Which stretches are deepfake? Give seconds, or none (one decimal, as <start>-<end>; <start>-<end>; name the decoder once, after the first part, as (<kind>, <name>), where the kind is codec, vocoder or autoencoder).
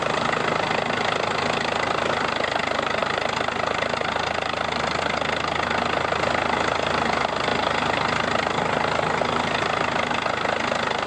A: none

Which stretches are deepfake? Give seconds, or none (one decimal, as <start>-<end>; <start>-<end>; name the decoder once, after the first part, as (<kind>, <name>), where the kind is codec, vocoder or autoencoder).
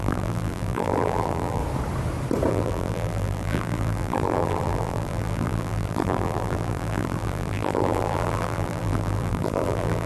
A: 0.0-1.6 (vocoder, BigVGAN v2); 2.5-10.1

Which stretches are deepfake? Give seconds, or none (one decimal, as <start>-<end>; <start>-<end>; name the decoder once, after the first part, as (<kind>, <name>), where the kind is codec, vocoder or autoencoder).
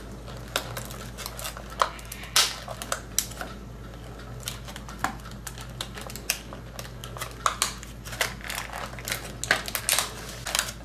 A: none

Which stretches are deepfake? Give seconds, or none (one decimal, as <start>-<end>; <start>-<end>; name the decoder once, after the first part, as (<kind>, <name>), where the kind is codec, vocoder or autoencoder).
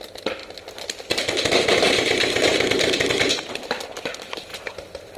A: none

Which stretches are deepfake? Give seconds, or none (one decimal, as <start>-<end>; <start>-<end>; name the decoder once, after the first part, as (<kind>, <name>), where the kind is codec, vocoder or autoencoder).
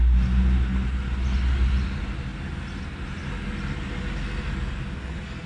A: none